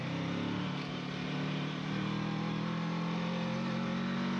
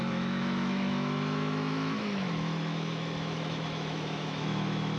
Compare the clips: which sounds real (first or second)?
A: first